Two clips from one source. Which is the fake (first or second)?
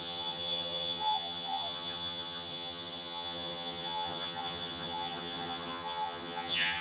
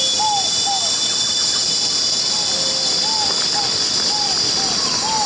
first